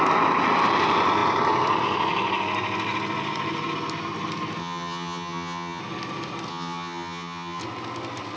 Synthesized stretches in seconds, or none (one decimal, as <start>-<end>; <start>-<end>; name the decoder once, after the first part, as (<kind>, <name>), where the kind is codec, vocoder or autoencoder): 4.6-5.8 (vocoder, HiFi-GAN); 6.5-7.6